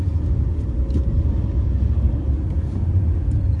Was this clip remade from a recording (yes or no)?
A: no